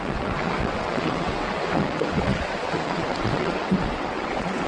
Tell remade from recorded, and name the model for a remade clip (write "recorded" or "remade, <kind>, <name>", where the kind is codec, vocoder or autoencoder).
remade, vocoder, WaveNeXt